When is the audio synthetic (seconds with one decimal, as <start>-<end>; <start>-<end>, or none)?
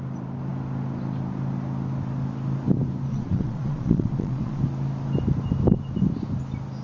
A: 3.1-4.6